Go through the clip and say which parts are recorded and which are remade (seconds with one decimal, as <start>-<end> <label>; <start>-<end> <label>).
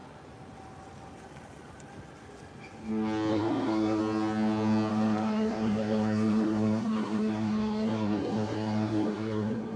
0.0-3.3 recorded; 3.3-4.0 remade; 4.0-4.9 recorded; 4.9-9.8 remade